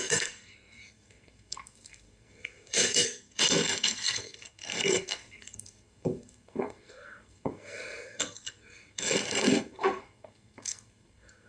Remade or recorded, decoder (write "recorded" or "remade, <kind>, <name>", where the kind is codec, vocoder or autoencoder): remade, codec, SNAC